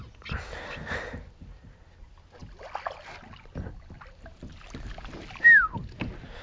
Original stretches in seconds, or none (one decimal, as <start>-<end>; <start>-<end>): 0.0-6.4